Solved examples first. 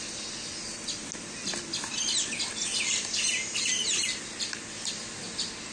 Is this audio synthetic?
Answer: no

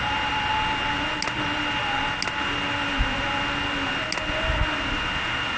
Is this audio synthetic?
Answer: no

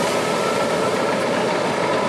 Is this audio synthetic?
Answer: no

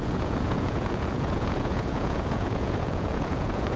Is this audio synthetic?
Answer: yes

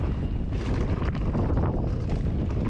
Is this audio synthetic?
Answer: no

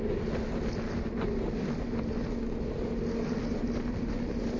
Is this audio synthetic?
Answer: no